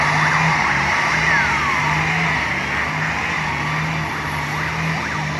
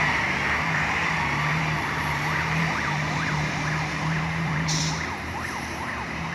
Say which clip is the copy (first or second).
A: second